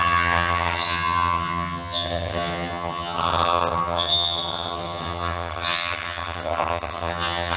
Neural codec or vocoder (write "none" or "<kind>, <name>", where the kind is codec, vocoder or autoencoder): vocoder, HiFi-GAN